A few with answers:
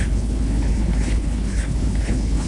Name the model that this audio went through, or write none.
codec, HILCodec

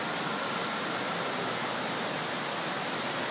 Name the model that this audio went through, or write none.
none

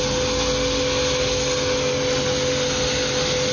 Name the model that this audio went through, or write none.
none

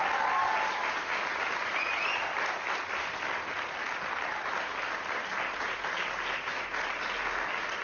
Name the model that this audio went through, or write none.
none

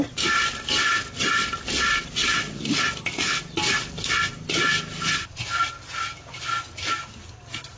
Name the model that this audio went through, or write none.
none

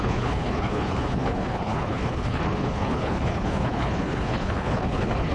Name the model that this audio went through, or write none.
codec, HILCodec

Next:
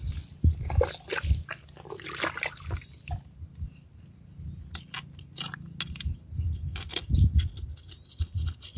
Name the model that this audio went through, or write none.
none